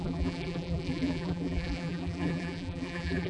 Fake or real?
fake